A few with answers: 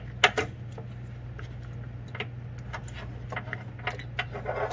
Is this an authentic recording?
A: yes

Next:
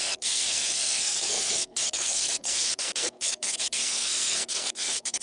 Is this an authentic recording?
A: no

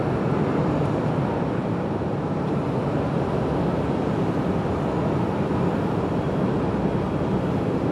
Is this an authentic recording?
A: yes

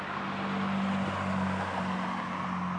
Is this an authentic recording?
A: yes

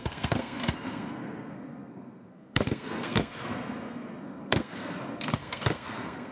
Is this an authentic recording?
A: no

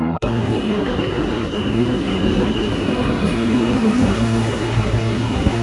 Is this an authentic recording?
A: no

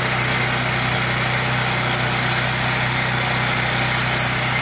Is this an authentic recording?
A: yes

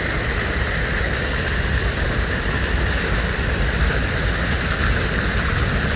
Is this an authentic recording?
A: yes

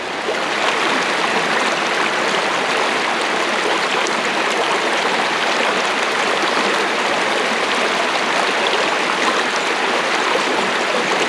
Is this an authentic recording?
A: yes